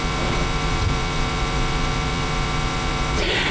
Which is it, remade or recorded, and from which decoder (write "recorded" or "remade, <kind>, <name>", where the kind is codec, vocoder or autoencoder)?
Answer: remade, vocoder, Vocos